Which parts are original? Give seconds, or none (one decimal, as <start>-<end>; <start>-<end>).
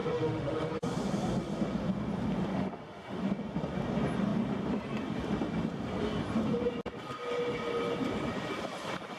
0.7-2.5; 3.2-9.2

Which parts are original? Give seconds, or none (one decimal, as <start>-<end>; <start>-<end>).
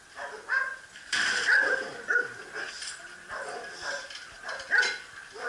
0.0-5.5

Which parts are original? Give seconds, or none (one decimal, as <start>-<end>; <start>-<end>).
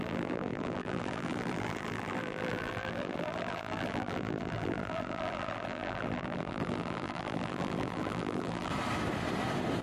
8.7-9.8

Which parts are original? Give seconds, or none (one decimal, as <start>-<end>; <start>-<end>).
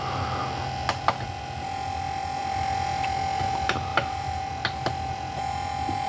0.0-3.9; 4.5-6.1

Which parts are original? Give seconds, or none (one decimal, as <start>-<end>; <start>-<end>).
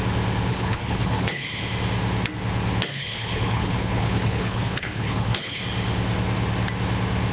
0.0-0.5; 1.6-2.9; 5.6-7.3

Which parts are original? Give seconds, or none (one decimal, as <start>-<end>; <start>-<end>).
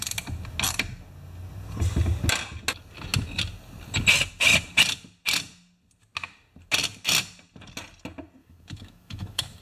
0.0-8.4